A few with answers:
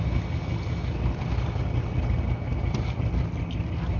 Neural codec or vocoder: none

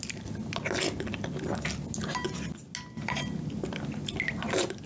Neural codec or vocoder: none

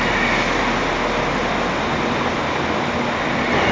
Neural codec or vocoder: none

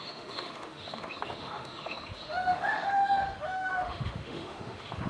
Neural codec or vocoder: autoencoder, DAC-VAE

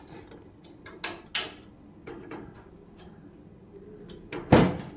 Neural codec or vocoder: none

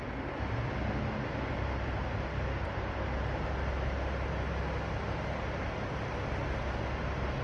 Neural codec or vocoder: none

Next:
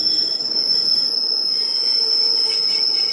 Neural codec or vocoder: vocoder, BigVGAN v2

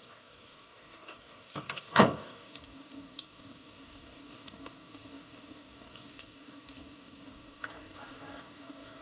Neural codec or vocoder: codec, DAC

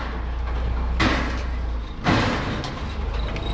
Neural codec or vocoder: none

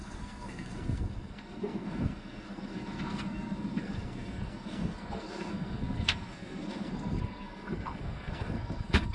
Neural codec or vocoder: codec, SNAC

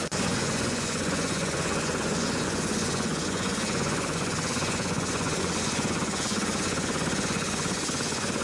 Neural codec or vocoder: vocoder, Vocos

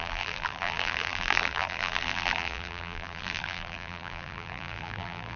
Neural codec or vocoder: vocoder, BigVGAN v2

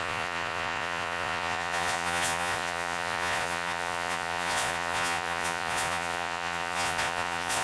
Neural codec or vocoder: vocoder, Vocos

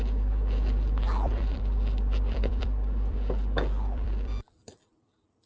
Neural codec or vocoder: vocoder, BigVGAN v2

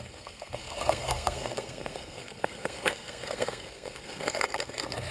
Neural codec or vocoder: codec, SNAC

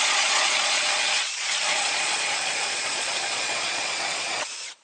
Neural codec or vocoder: vocoder, Vocos